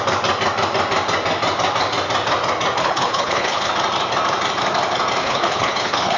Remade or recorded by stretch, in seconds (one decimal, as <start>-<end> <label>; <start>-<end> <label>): 0.0-2.8 recorded; 2.8-3.7 remade; 3.7-5.2 recorded; 5.2-6.2 remade